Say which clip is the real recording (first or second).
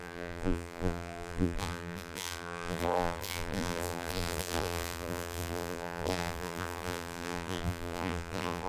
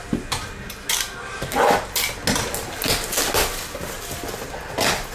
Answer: second